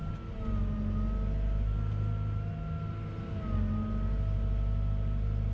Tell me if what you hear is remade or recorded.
recorded